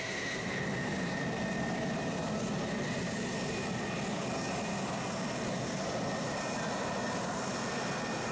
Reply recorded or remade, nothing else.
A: recorded